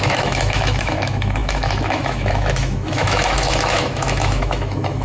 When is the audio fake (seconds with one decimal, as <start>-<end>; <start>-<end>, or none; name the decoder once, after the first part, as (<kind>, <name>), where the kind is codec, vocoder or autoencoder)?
0.0-5.0 (autoencoder, DAC-VAE)